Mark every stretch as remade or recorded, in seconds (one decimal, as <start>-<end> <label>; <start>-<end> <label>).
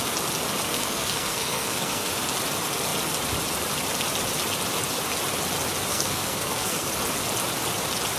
0.0-0.7 recorded; 0.7-2.1 remade; 2.1-5.9 recorded; 5.9-6.9 remade; 6.9-8.2 recorded